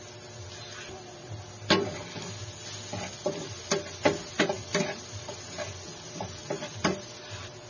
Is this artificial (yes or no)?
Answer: no